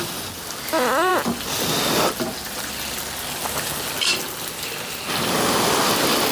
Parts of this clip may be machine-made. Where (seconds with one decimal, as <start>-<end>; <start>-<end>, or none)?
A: none